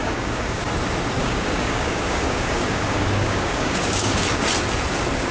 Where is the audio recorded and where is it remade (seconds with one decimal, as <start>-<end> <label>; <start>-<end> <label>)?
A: 0.0-0.6 remade; 0.6-1.2 recorded; 1.2-4.4 remade; 4.4-5.3 recorded